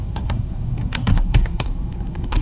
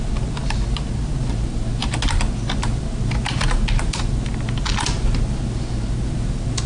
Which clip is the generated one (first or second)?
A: first